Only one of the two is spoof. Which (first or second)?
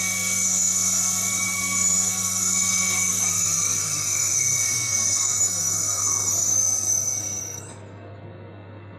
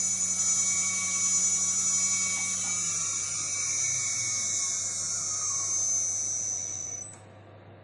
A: first